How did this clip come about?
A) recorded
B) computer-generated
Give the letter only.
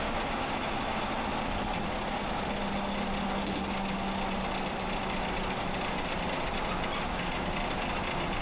A